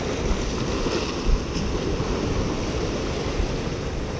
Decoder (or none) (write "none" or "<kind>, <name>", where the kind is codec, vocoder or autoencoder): none